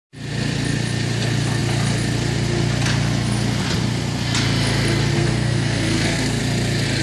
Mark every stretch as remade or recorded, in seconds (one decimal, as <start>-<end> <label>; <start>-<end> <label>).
0.0-5.1 recorded; 5.1-6.4 remade; 6.4-7.0 recorded